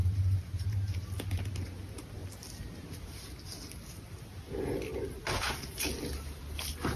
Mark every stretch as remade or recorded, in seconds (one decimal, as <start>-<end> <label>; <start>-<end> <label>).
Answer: 0.0-0.8 remade; 0.8-7.0 recorded